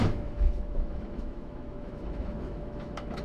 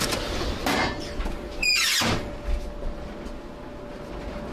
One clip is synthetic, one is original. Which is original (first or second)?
second